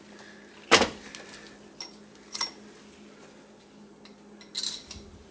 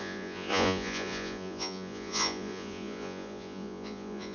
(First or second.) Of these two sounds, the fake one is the second